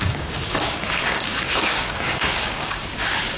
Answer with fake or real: fake